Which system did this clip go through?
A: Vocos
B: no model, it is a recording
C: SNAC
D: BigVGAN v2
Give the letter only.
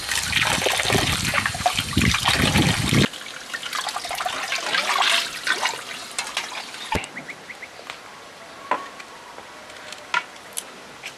B